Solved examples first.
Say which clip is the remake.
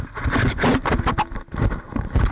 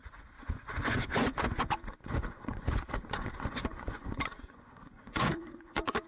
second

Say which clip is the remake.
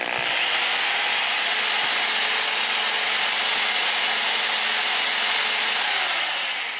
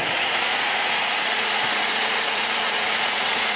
second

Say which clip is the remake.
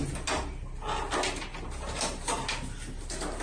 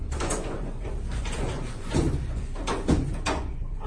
second